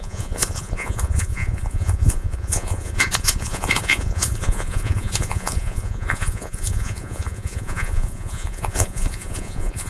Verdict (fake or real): fake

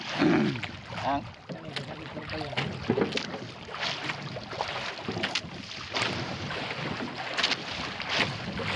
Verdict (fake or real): real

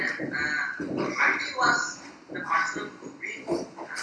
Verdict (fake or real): real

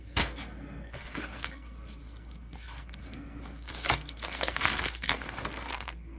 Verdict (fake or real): fake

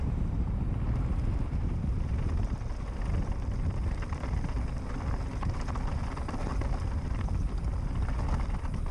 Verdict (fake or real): real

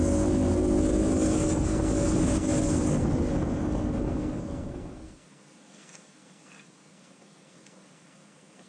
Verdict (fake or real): fake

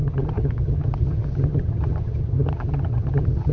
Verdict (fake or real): fake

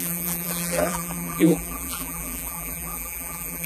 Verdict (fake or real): fake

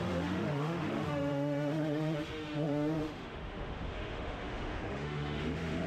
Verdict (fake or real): fake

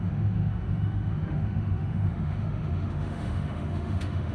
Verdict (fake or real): fake